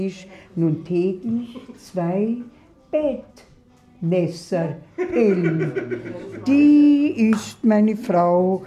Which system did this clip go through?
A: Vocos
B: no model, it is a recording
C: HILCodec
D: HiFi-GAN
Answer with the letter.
B